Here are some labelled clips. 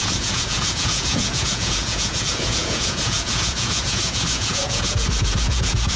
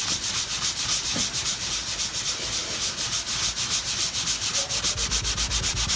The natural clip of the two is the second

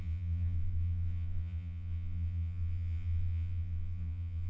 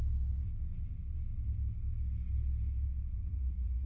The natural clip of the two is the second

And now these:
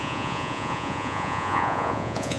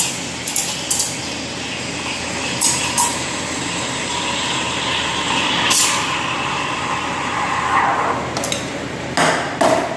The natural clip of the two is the second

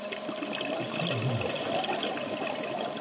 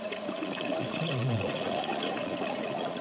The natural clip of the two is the first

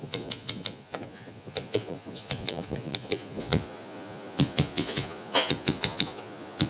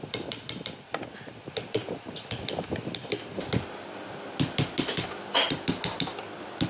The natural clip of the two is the second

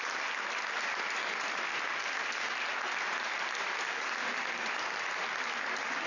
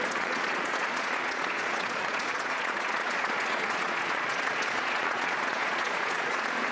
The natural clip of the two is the first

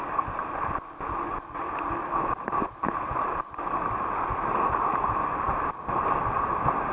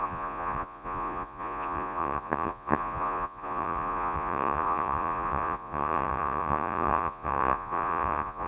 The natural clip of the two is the first